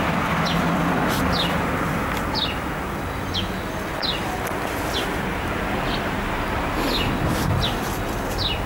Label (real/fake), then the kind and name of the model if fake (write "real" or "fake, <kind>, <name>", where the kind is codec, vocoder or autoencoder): real